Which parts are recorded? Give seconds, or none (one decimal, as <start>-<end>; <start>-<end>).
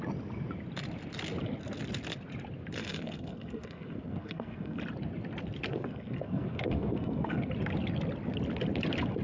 0.0-2.8; 4.8-5.7; 7.5-9.2